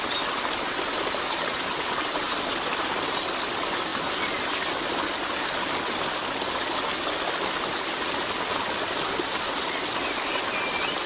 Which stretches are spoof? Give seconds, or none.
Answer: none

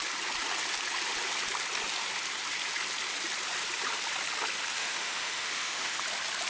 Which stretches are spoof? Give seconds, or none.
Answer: 4.8-6.0 (autoencoder, DAC-VAE)

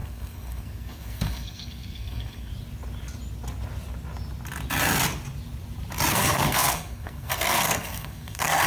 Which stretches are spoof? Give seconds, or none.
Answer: 0.0-2.5 (codec, SNAC); 6.1-8.7

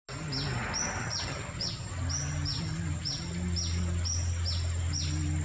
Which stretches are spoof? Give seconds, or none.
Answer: 1.0-1.9 (vocoder, HiFi-GAN)

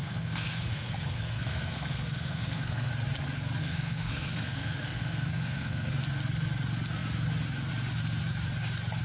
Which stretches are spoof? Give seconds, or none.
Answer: 0.0-2.9 (codec, SNAC); 3.6-5.9

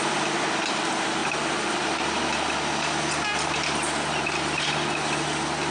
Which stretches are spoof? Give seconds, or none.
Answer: none

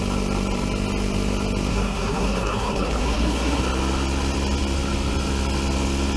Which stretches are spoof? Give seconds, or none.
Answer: 1.7-3.6 (codec, SNAC)

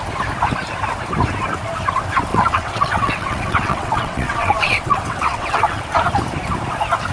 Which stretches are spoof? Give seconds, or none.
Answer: 2.3-5.8 (vocoder, WaveNeXt)